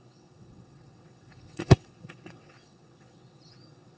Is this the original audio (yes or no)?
no